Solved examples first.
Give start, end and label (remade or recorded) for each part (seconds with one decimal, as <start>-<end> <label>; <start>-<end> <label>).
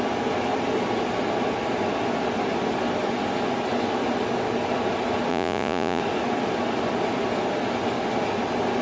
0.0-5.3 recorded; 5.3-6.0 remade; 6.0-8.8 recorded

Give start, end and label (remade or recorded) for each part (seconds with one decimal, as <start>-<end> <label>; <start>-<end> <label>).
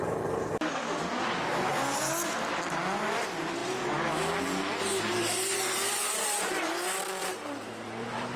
0.0-4.9 recorded; 4.9-6.6 remade; 6.6-7.2 recorded; 7.2-8.4 remade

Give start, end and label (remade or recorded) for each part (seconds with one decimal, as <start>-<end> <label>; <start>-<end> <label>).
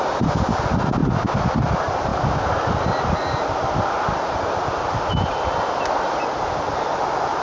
0.0-7.4 recorded